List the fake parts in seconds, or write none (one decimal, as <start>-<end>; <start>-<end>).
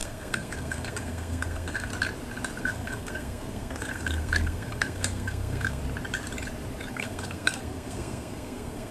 0.0-1.9; 2.6-5.8; 6.9-8.9